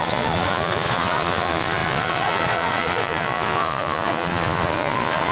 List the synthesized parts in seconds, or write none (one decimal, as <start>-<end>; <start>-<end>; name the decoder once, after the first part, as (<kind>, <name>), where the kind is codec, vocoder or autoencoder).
0.0-5.3 (vocoder, Vocos)